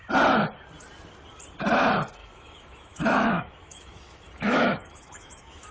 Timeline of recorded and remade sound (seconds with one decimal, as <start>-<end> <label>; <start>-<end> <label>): 0.0-2.2 recorded; 2.2-5.7 remade